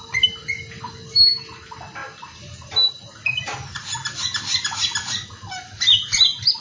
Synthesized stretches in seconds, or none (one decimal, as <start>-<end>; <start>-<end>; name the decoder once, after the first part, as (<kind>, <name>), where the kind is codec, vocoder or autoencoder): none